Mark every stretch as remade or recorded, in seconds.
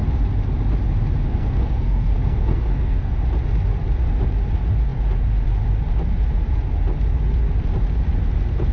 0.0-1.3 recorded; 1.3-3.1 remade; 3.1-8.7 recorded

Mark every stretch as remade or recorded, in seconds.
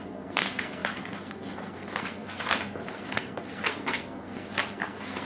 0.0-5.2 remade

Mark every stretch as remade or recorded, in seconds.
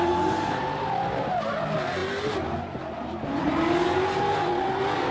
0.0-0.6 recorded; 0.6-1.6 remade; 1.6-5.1 recorded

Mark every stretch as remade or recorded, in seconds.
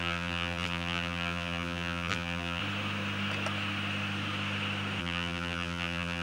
0.0-2.6 remade; 2.6-5.0 recorded; 5.0-6.2 remade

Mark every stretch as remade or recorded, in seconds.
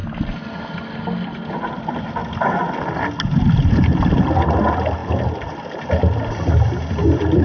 0.0-7.4 recorded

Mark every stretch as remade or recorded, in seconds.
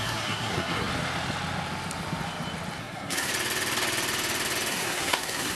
0.0-0.9 remade; 0.9-2.8 recorded; 2.8-3.3 remade; 3.3-4.7 recorded; 4.7-5.5 remade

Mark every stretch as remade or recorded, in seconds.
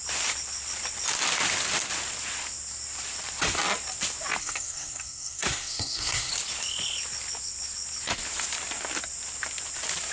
0.0-4.4 recorded; 4.4-6.3 remade; 6.3-10.1 recorded